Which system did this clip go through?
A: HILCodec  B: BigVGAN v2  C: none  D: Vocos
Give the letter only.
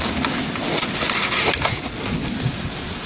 C